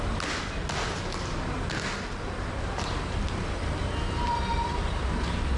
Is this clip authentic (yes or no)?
yes